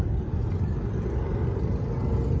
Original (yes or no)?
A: yes